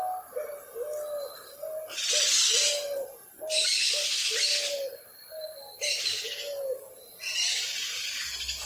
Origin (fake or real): real